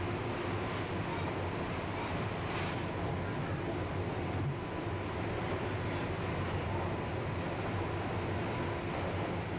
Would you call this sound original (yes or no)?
yes